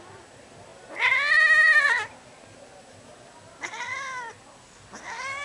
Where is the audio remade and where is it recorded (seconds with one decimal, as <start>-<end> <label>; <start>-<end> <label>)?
0.0-5.4 recorded